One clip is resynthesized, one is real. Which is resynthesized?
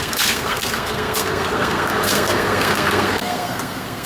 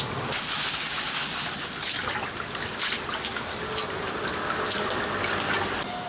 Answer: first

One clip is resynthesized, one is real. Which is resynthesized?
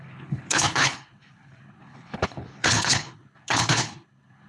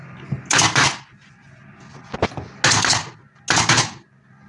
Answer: first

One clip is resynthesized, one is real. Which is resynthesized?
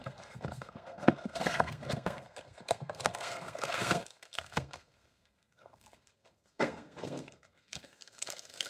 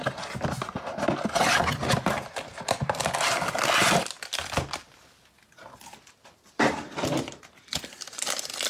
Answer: first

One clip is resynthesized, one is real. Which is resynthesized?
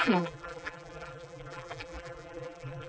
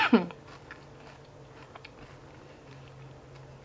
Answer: first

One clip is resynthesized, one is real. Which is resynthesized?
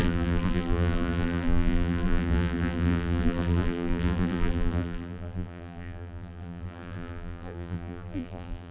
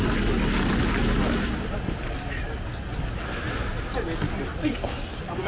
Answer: first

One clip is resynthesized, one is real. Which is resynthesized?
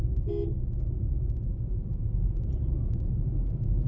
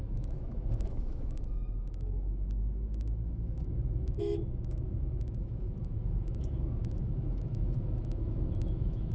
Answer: second